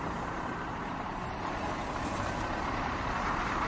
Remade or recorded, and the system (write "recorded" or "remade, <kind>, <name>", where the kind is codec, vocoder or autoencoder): remade, vocoder, BigVGAN v2